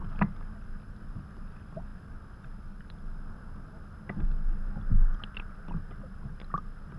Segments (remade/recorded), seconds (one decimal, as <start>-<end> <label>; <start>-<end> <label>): 0.0-7.0 recorded